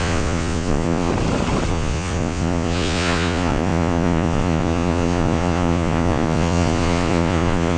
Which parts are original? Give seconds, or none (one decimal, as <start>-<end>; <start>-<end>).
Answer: 1.1-1.7